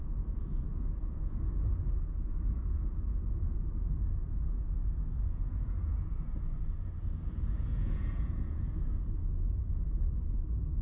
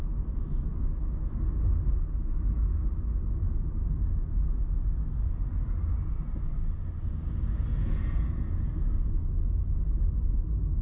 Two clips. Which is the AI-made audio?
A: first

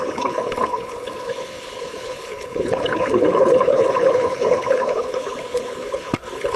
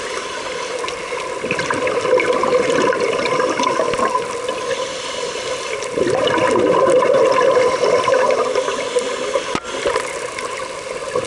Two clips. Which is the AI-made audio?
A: first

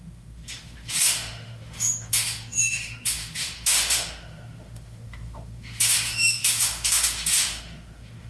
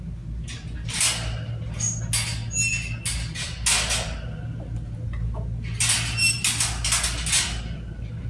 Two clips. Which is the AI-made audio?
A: first